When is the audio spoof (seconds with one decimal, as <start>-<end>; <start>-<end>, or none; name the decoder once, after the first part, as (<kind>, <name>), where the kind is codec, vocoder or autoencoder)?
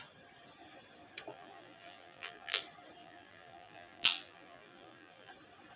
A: 1.3-2.6 (vocoder, BigVGAN v2); 3.0-5.3